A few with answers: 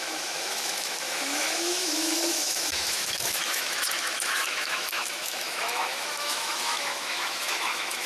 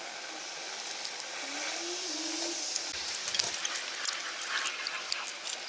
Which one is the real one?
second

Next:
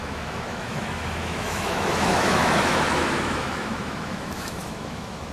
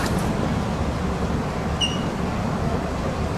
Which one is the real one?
second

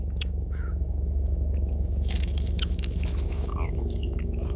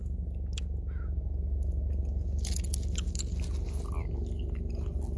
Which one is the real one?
second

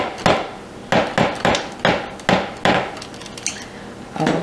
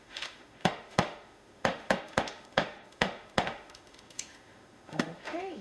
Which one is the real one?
first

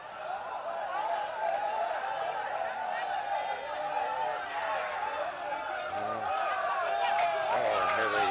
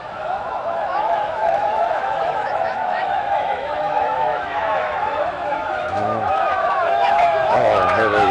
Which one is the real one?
first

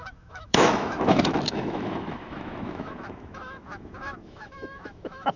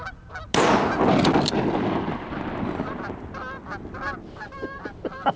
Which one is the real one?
second